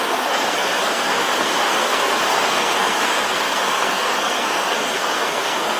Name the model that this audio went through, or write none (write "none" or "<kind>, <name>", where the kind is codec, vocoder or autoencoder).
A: codec, SNAC